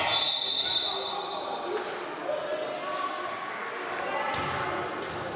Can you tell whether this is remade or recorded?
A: recorded